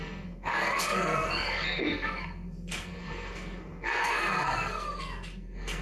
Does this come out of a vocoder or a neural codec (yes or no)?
yes